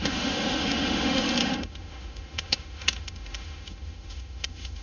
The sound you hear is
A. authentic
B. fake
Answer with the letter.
B